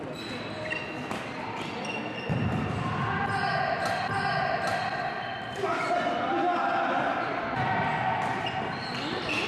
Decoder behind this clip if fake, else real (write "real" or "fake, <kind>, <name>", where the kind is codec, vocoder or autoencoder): real